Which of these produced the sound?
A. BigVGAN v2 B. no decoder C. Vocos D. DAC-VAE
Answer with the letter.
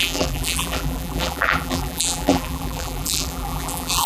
A